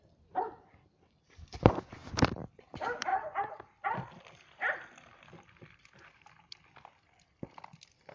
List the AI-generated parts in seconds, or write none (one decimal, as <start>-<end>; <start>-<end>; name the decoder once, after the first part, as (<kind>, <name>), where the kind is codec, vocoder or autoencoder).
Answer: 0.0-2.0 (vocoder, BigVGAN v2); 2.7-3.1; 4.2-8.1